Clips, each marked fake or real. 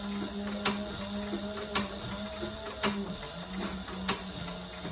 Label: real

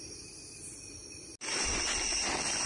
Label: real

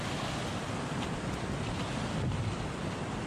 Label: real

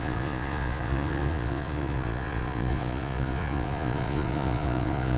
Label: fake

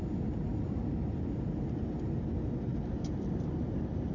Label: real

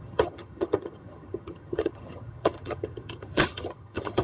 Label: fake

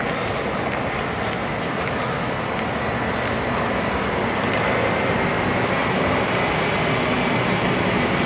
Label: real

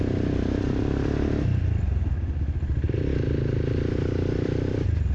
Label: fake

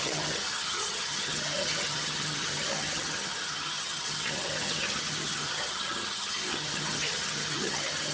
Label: fake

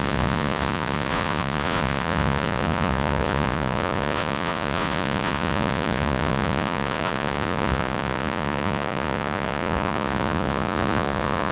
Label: fake